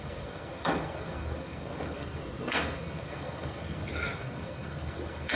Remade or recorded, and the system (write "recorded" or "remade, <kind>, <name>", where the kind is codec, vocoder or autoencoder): remade, codec, SNAC